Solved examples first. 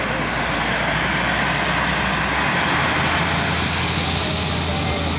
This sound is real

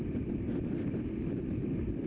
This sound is real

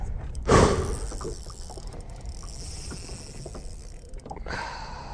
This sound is real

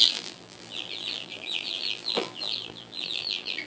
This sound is fake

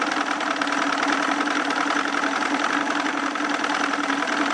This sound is real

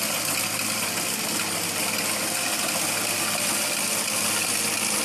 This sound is real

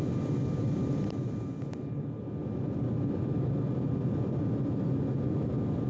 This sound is real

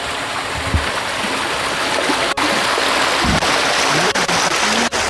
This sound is real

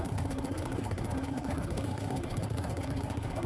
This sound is fake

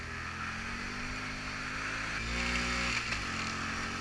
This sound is real